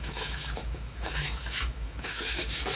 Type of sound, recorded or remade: remade